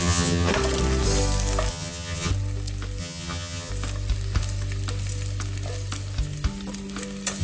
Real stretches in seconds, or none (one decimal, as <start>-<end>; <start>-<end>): 0.5-1.7; 2.3-3.0; 3.7-7.4